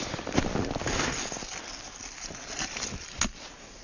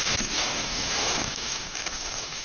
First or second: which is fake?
second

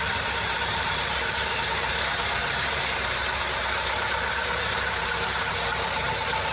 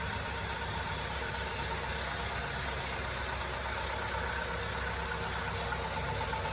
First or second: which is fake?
first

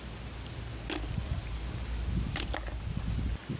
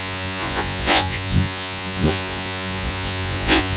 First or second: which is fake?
second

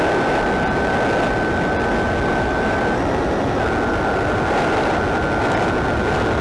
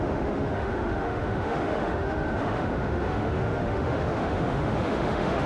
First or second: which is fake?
second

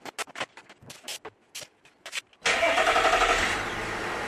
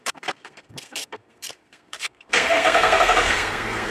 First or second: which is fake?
second